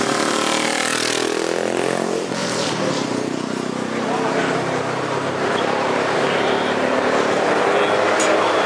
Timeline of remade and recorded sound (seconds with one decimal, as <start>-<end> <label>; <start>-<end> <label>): 0.0-2.4 recorded; 2.4-7.5 remade; 7.5-8.7 recorded